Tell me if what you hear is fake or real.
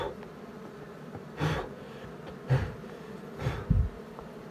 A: real